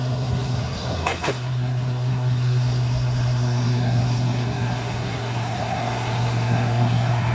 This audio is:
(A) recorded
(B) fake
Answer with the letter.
B